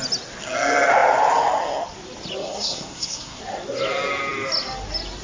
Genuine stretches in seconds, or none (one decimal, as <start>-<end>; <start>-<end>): 0.0-2.4; 3.4-5.2